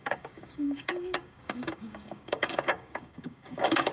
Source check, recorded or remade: remade